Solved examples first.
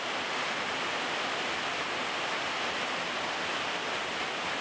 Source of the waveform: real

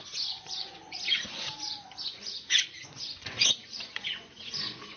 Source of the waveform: fake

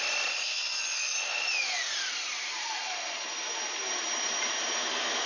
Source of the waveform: fake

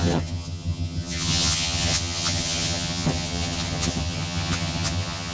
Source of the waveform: fake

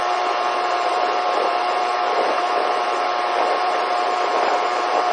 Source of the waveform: fake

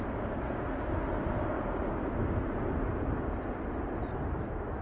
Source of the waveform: real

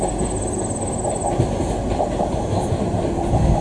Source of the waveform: real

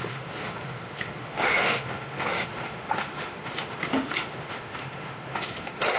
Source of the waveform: fake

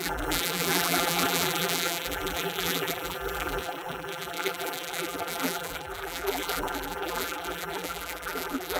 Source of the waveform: fake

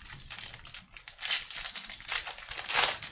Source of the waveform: real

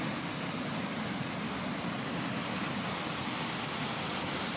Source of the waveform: real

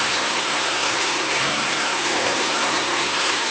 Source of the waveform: fake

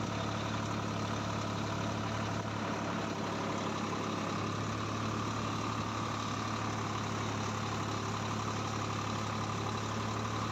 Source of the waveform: real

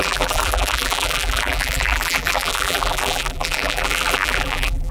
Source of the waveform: fake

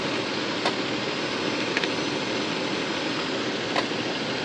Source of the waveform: real